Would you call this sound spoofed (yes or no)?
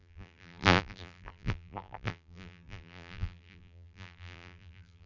yes